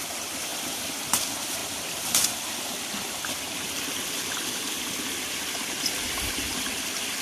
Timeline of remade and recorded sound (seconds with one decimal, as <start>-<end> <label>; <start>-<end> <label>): 0.0-1.6 remade; 1.6-5.9 recorded; 5.9-7.2 remade